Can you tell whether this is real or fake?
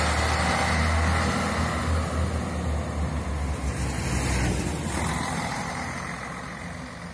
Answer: real